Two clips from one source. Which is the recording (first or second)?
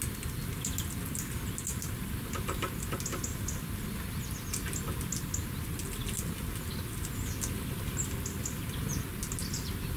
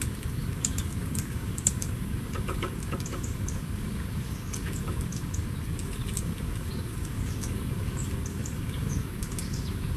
first